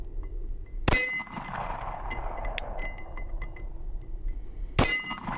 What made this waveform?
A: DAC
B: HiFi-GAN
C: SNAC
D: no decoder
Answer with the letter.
D